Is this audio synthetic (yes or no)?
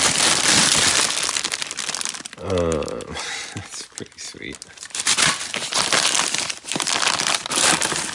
no